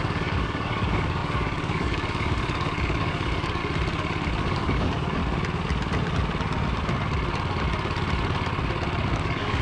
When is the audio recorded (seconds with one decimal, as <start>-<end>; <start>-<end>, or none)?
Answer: 3.6-4.4; 5.2-9.1